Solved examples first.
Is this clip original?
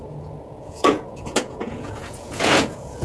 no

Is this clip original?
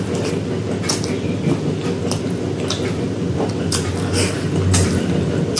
yes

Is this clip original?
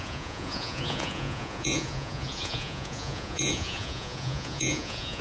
no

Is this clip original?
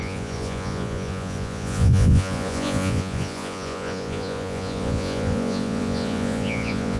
no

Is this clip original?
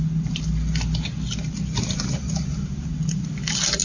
yes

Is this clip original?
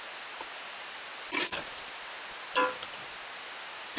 yes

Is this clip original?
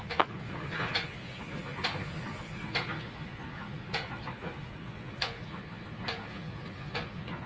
no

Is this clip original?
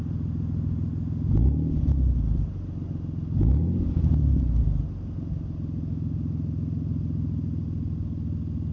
yes